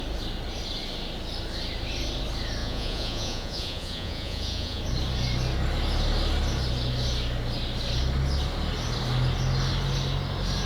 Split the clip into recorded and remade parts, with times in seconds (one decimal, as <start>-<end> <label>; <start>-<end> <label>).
0.0-2.6 recorded; 2.6-4.8 remade; 4.8-10.6 recorded